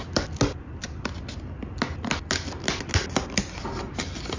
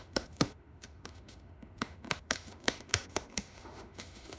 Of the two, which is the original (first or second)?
first